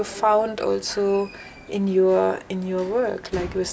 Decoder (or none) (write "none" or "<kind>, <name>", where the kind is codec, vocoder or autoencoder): none